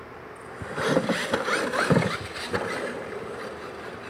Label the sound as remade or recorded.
recorded